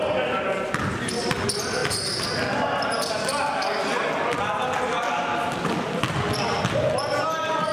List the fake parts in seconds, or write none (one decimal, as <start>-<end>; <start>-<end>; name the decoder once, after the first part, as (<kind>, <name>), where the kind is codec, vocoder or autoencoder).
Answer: none